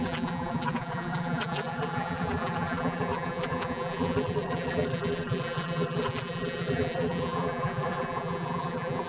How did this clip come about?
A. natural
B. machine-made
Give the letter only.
B